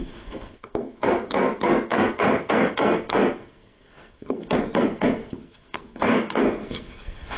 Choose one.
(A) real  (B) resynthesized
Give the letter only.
B